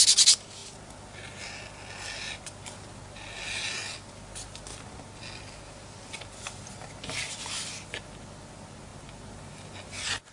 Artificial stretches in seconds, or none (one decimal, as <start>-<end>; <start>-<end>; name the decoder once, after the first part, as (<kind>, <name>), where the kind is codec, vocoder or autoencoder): none